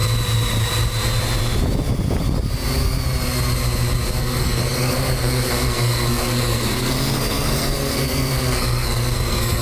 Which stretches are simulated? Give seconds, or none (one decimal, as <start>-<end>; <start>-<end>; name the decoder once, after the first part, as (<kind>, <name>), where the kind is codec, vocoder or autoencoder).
4.2-9.6 (codec, SNAC)